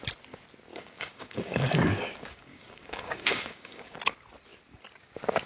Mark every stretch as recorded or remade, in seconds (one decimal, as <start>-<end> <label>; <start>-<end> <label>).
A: 0.0-0.7 recorded; 0.7-4.0 remade; 4.0-5.5 recorded